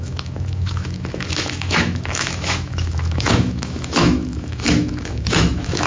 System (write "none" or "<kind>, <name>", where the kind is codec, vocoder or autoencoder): autoencoder, DAC-VAE